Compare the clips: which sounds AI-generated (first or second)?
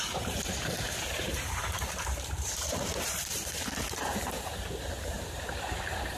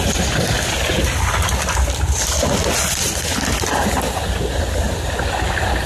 first